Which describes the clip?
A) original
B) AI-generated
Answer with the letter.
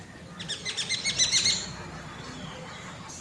A